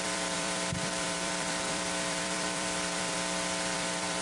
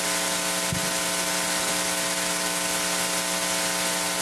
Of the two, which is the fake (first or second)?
first